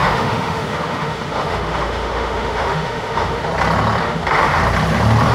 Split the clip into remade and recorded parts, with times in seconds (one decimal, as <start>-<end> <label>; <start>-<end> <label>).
0.0-3.5 remade; 3.5-4.0 recorded; 4.0-4.6 remade; 4.6-5.3 recorded